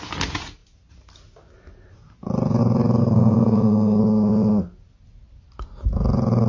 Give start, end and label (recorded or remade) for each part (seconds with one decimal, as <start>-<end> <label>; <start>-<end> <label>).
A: 0.0-3.0 recorded; 3.0-4.0 remade; 4.0-6.5 recorded